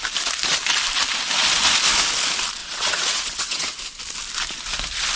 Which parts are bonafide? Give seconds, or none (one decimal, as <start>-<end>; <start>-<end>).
0.0-2.6; 3.8-5.2